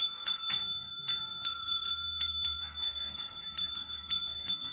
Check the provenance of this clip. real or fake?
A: fake